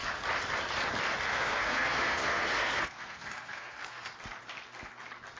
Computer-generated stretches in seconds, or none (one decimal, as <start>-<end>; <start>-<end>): 1.3-4.1